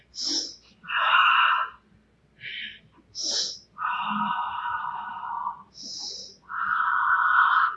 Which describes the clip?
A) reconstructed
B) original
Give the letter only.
B